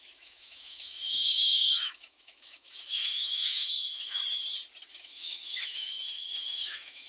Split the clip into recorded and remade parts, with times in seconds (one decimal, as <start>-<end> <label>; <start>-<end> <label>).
0.0-4.2 remade; 4.2-4.9 recorded; 4.9-7.1 remade